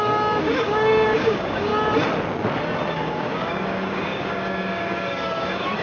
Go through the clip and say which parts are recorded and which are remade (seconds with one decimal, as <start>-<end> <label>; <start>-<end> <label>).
0.0-1.7 remade; 1.7-2.9 recorded; 2.9-5.8 remade